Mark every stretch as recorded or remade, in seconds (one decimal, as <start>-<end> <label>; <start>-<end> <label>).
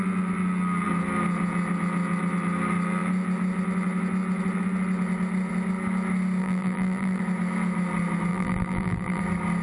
0.0-6.4 recorded; 6.4-7.2 remade; 7.2-8.3 recorded; 8.3-9.2 remade; 9.2-9.6 recorded